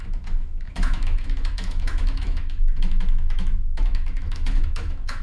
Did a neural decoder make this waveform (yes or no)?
yes